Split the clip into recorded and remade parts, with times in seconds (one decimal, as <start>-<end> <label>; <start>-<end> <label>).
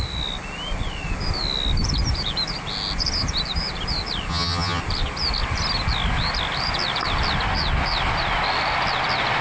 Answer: 0.0-4.3 recorded; 4.3-4.8 remade; 4.8-9.4 recorded